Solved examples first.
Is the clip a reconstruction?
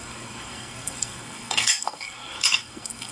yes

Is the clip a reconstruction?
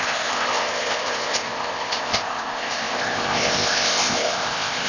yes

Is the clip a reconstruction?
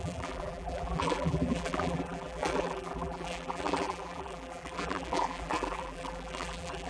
yes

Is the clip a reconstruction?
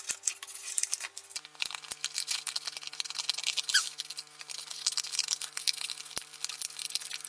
no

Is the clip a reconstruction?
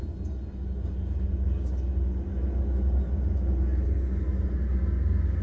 no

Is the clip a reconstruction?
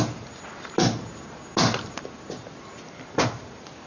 no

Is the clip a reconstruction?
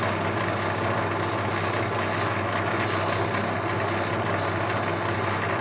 no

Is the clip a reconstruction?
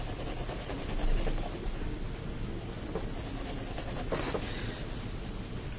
no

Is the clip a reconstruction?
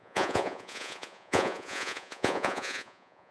yes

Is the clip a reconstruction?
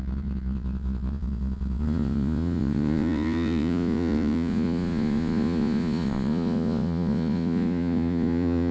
yes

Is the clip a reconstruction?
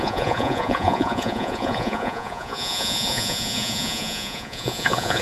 yes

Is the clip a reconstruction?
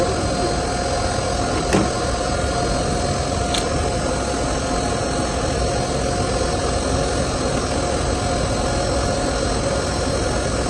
no